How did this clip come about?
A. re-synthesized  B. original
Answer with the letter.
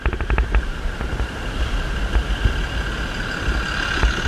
B